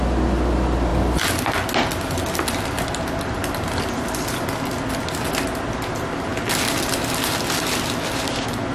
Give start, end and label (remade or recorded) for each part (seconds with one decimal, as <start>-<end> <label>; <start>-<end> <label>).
0.0-8.7 recorded